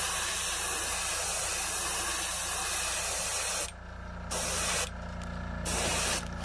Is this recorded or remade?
recorded